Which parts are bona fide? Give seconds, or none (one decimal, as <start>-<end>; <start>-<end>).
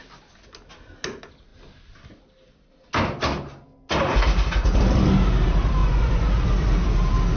0.0-5.8; 6.3-7.4